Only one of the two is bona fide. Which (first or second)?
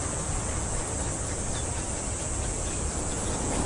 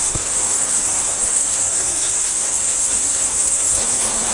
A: first